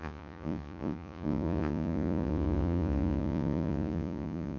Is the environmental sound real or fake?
fake